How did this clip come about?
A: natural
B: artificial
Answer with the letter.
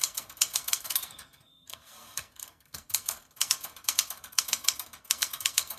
B